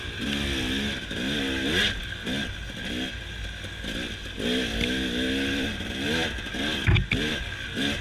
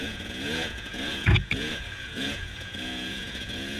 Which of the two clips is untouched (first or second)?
first